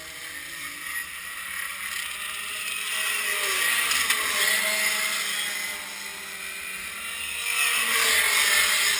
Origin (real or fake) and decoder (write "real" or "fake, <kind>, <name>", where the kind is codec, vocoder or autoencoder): real